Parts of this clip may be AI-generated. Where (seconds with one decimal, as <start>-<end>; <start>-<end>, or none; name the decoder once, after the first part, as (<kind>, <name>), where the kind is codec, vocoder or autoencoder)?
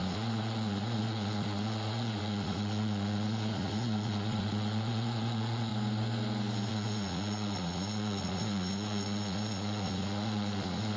0.0-5.7 (vocoder, Vocos); 6.7-11.0